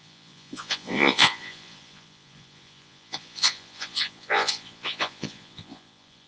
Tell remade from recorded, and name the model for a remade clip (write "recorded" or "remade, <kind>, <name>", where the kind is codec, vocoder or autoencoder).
remade, vocoder, Vocos